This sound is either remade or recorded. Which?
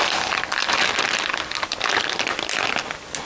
remade